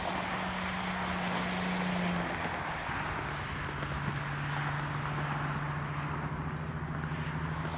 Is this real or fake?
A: real